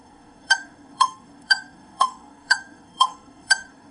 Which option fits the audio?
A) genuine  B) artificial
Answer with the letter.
B